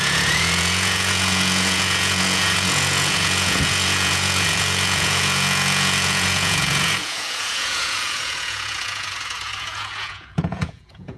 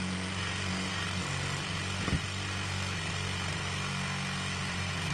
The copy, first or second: first